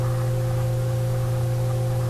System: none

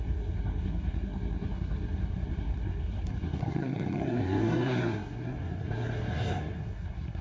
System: codec, SNAC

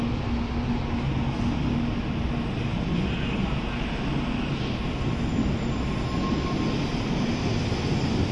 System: none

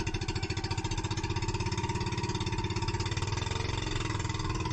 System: none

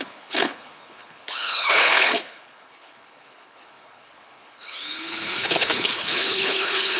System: codec, HILCodec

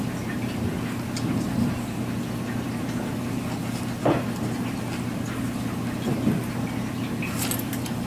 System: none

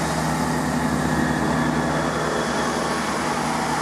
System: none